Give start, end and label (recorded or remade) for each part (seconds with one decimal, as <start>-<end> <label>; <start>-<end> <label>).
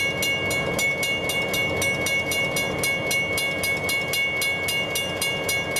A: 0.0-5.8 recorded